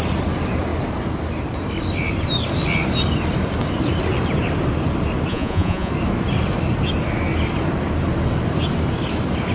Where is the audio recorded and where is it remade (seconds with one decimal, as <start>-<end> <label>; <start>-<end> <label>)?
0.0-5.3 recorded; 5.3-5.9 remade; 5.9-9.5 recorded